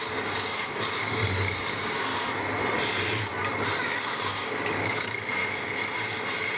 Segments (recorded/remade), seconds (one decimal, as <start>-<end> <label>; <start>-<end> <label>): 0.0-2.1 remade; 2.1-3.8 recorded; 3.8-5.4 remade; 5.4-6.6 recorded